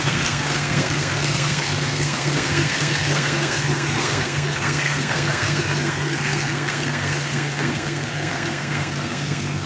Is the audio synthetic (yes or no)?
yes